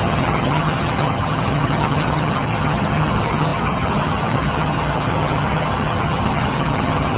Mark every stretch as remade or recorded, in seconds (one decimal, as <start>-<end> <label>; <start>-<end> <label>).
0.0-7.2 remade

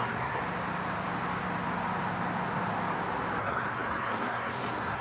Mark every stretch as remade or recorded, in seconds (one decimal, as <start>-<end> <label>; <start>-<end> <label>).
0.0-0.4 remade; 0.4-3.4 recorded; 3.4-5.0 remade

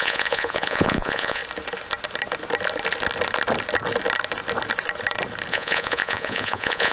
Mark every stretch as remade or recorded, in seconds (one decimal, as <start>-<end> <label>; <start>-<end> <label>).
0.0-1.4 remade; 1.4-5.5 recorded; 5.5-6.9 remade

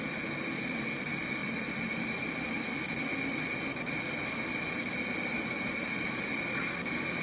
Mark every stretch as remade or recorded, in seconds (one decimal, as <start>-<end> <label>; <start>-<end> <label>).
0.0-7.2 recorded